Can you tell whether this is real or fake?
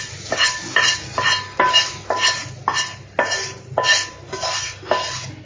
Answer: real